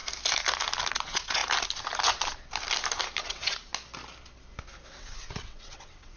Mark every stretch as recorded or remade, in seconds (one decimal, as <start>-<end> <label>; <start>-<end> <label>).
0.0-0.9 recorded; 0.9-1.4 remade; 1.4-3.2 recorded; 3.2-3.7 remade; 3.7-4.9 recorded; 4.9-6.2 remade